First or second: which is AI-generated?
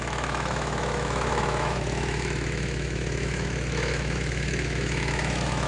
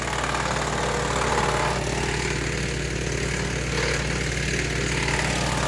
first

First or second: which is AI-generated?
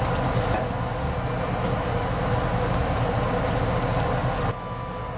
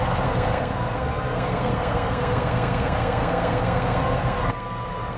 second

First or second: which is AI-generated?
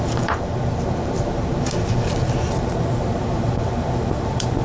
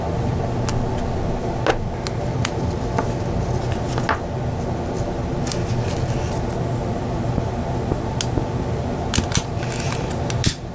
first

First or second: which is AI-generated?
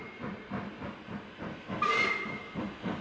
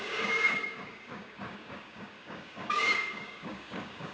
second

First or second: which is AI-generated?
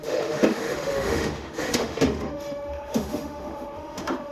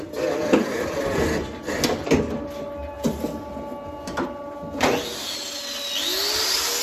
first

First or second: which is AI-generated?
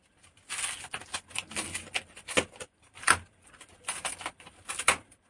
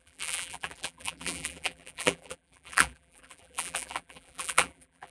second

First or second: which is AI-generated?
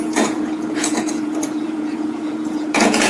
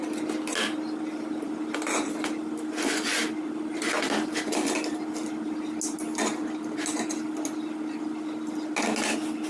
first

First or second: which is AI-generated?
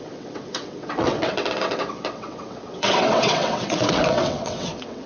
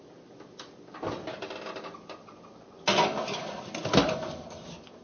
first